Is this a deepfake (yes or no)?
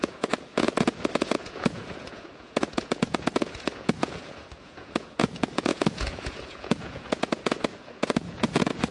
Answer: yes